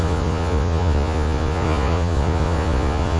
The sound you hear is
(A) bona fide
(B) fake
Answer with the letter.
B